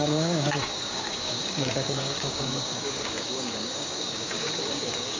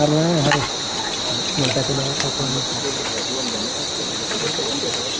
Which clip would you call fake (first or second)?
first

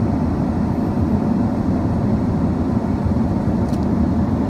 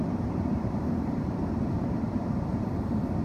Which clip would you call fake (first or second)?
second